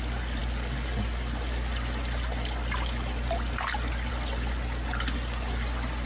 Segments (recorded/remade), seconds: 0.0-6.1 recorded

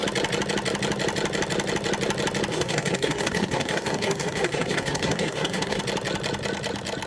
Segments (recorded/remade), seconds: 0.0-2.5 recorded; 2.5-5.8 remade; 5.8-7.1 recorded

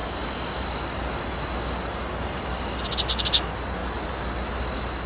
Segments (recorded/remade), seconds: 0.0-5.1 recorded

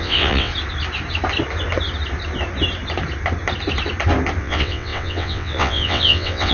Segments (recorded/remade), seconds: 0.0-0.5 remade; 0.5-4.4 recorded; 4.4-6.5 remade

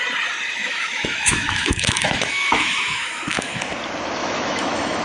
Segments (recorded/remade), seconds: 0.0-0.6 recorded; 0.6-3.6 remade; 3.6-4.2 recorded; 4.2-5.0 remade

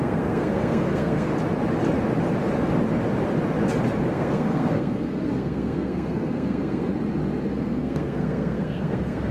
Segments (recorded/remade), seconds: 0.0-1.3 remade; 1.3-4.1 recorded; 4.1-6.9 remade; 6.9-7.5 recorded; 7.5-9.3 remade

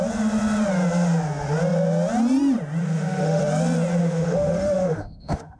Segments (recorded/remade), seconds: 0.0-2.8 recorded; 2.8-3.4 remade; 3.4-4.0 recorded; 4.0-5.6 remade

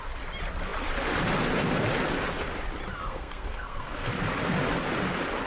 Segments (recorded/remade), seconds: 0.0-3.0 recorded; 3.0-4.1 remade; 4.1-5.5 recorded